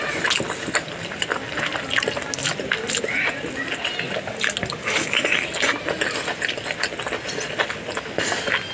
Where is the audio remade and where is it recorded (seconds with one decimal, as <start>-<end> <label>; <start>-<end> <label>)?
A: 0.0-8.7 recorded